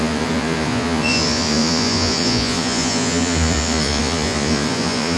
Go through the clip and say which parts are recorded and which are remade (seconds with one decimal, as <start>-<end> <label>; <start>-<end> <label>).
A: 0.0-5.2 remade